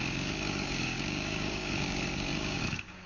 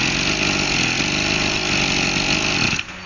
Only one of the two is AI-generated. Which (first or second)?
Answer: first